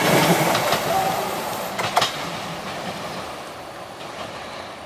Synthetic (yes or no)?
no